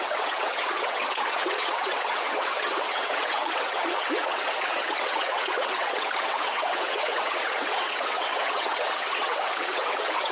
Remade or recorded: remade